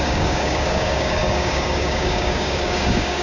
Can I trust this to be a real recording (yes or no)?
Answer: no